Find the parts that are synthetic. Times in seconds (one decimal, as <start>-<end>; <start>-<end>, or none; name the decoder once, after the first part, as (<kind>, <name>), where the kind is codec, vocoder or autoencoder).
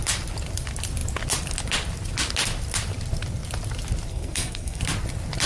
4.1-4.8 (codec, SNAC)